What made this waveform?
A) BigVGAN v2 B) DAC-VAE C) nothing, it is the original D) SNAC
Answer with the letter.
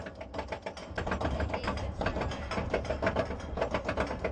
C